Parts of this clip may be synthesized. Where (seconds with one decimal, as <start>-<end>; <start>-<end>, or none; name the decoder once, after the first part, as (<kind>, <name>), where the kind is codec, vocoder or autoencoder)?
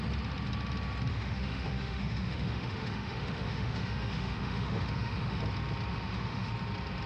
1.1-5.4 (autoencoder, DAC-VAE); 5.9-6.5